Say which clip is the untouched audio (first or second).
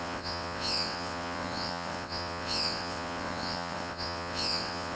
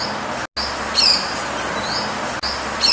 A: second